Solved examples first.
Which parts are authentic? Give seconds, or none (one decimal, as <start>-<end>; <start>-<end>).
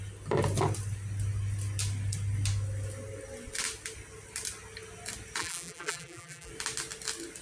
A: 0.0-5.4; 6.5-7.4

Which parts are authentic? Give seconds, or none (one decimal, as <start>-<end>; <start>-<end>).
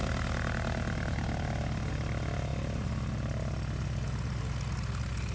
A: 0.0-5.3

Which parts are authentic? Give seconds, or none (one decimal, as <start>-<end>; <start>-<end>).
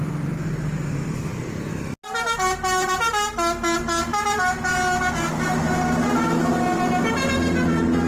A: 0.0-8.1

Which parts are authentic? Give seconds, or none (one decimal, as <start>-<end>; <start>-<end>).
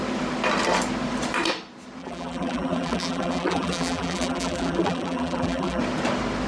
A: 0.0-2.0; 5.8-6.5